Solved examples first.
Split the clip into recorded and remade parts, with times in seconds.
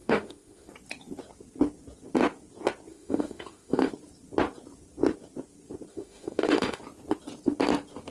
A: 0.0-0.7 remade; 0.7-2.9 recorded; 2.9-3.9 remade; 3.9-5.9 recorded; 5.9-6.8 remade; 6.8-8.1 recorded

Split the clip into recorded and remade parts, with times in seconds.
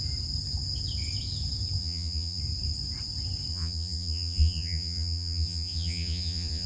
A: 0.0-1.8 recorded; 1.8-2.4 remade; 2.4-3.5 recorded; 3.5-6.7 remade